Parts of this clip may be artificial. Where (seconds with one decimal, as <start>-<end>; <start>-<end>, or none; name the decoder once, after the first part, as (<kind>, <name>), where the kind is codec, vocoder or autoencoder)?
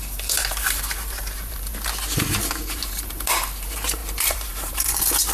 0.0-1.7 (vocoder, BigVGAN v2); 2.6-5.3